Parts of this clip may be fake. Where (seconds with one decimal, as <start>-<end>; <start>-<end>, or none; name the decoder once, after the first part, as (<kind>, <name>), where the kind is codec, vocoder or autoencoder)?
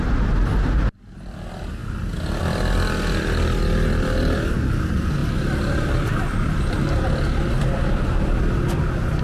none